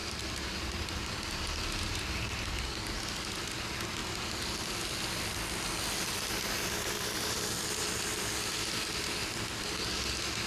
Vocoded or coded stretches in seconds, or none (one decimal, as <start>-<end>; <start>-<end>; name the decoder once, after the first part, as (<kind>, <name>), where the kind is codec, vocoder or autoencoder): 0.0-2.5 (vocoder, BigVGAN v2)